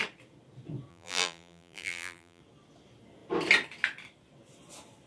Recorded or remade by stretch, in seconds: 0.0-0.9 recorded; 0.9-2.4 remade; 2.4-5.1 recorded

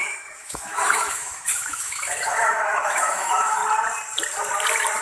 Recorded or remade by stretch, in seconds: 0.0-3.6 remade; 3.6-5.0 recorded

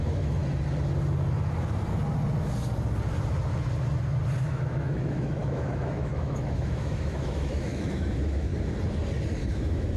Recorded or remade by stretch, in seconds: 0.0-0.4 remade; 0.4-4.4 recorded; 4.4-8.5 remade; 8.5-9.5 recorded; 9.5-10.0 remade

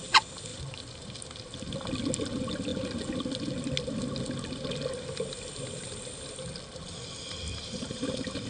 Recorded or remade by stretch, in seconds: 0.0-0.5 recorded; 0.5-1.2 remade; 1.2-7.5 recorded; 7.5-8.5 remade

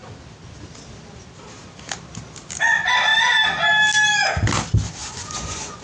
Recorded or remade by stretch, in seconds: 0.0-5.0 recorded; 5.0-5.8 remade